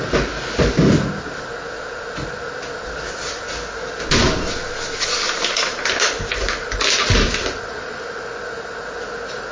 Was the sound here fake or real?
real